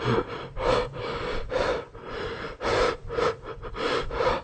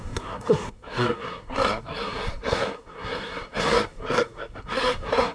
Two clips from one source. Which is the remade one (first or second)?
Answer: second